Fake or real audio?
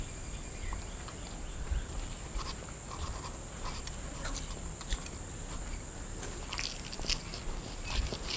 real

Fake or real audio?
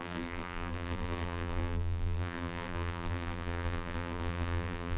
fake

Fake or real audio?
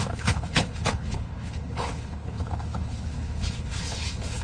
fake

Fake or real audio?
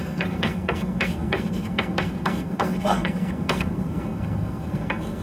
fake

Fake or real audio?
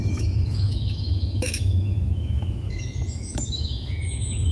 fake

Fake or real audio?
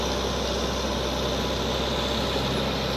real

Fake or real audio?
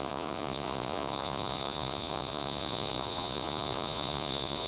fake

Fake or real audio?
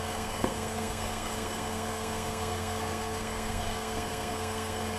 fake